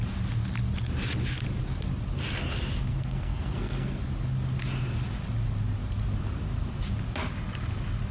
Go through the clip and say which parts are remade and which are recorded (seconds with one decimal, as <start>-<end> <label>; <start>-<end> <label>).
0.0-2.9 recorded; 2.9-4.0 remade; 4.0-8.1 recorded